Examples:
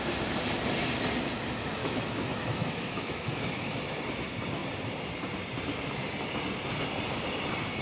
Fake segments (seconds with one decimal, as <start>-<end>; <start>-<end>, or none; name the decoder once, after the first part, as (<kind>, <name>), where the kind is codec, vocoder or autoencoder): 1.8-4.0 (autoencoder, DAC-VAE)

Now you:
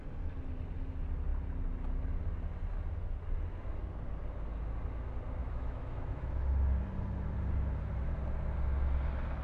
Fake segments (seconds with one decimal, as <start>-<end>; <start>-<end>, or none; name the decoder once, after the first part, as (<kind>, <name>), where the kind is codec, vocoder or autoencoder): 5.4-6.5 (autoencoder, DAC-VAE)

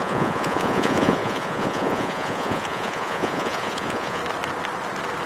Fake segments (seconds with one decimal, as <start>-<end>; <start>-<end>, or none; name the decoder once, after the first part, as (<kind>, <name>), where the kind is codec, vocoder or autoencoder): 0.0-4.2 (vocoder, Vocos)

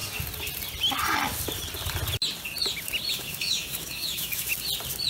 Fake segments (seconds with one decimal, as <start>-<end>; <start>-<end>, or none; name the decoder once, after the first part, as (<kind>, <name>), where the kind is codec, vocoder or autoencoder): 3.1-4.5 (autoencoder, DAC-VAE)

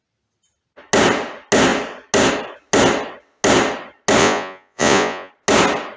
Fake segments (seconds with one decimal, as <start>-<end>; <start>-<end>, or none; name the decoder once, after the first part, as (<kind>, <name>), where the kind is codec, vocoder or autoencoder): 4.2-5.3 (vocoder, Vocos)

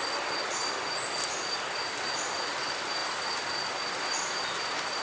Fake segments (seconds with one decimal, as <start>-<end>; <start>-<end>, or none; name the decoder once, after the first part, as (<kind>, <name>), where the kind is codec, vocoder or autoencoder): 0.0-0.6 (vocoder, BigVGAN v2); 1.5-3.0; 3.9-5.0